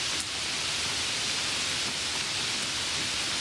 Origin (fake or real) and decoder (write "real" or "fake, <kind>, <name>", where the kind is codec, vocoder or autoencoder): real